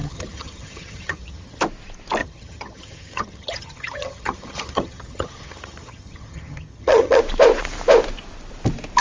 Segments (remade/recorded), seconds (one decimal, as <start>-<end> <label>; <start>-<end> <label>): 0.0-1.6 remade; 1.6-2.2 recorded; 2.2-7.2 remade; 7.2-9.0 recorded